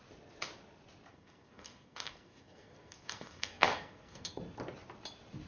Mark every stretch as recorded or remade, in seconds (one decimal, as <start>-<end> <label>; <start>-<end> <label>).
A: 0.0-1.1 recorded; 1.1-4.4 remade; 4.4-5.5 recorded